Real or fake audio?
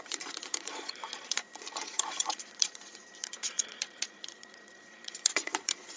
fake